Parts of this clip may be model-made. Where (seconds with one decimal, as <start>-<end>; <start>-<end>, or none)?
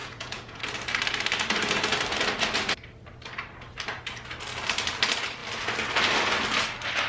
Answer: 0.0-0.6